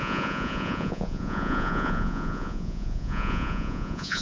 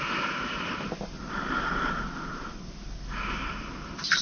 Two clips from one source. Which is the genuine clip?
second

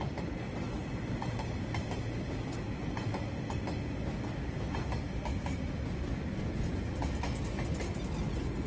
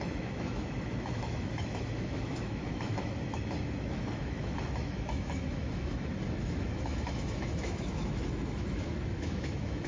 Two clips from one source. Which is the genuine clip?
first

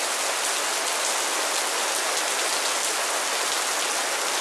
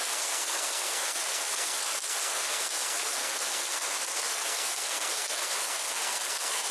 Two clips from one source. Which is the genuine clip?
first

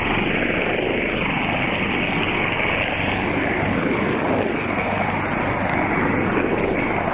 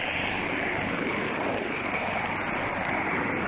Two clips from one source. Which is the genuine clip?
first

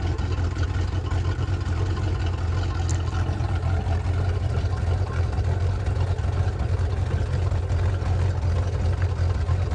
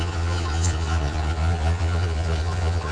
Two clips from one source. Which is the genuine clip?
first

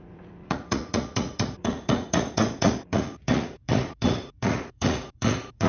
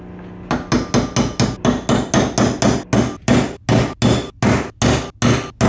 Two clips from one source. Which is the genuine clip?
second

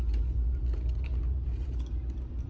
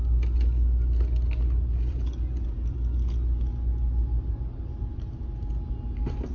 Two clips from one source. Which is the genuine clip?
second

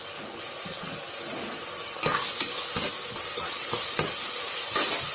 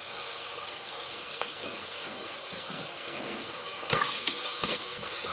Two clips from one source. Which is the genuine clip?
first